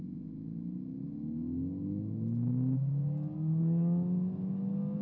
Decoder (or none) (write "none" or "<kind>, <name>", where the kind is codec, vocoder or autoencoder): none